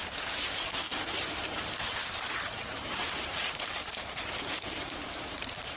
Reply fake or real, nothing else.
fake